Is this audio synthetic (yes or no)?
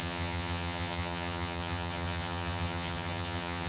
yes